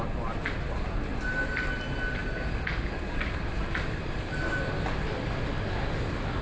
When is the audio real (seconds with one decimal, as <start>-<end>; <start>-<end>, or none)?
0.0-6.4